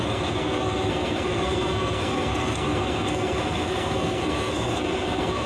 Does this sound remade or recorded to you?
remade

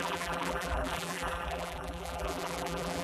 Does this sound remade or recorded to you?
remade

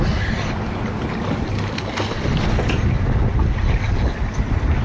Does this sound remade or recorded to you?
recorded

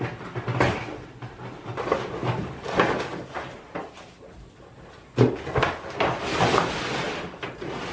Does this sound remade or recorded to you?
recorded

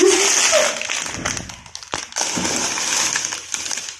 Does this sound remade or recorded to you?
recorded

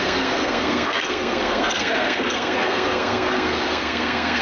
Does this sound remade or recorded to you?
remade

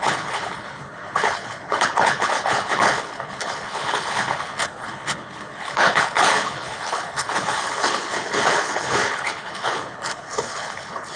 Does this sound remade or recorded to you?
remade